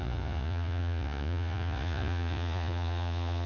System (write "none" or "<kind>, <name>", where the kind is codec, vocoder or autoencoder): vocoder, Vocos